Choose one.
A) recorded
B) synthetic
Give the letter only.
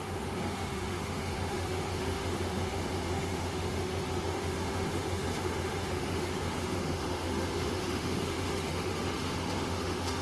B